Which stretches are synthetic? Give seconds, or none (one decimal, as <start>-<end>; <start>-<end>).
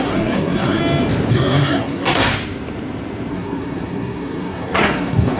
0.0-0.8; 1.3-2.3; 3.3-5.4